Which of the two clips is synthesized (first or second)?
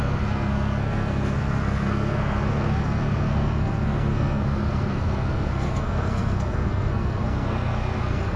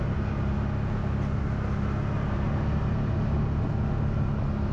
first